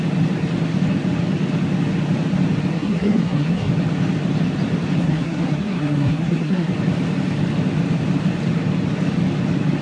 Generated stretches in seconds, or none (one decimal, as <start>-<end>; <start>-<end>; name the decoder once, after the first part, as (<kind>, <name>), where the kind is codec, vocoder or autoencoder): 2.7-3.7 (codec, SNAC); 5.0-6.7